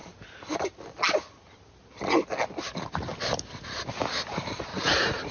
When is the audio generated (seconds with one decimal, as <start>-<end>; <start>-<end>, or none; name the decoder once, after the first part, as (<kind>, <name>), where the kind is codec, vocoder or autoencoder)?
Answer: 4.7-5.3 (vocoder, Vocos)